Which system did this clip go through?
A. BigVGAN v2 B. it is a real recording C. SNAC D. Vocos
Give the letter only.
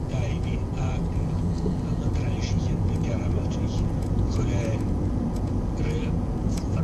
D